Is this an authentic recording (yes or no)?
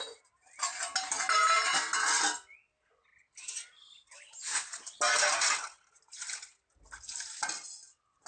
yes